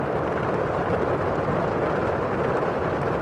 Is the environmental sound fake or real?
real